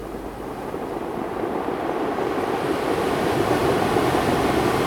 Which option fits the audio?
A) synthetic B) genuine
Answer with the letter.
B